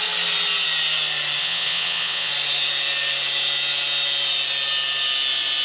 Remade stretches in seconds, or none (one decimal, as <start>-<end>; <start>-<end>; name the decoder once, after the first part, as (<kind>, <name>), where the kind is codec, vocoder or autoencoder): 1.4-2.3 (vocoder, WaveNeXt)